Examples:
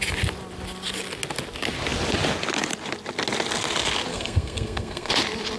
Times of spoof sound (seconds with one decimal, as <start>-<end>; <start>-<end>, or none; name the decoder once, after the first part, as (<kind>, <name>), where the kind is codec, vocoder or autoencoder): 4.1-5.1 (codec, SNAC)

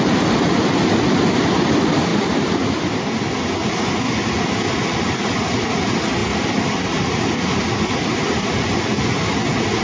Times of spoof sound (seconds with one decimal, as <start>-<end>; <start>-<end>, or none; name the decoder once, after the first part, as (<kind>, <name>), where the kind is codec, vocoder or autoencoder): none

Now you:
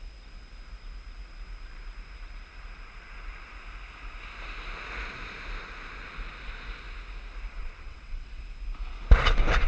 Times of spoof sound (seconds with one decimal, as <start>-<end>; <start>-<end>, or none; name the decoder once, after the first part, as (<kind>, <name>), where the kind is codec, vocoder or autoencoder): 7.6-8.4 (vocoder, WaveNeXt)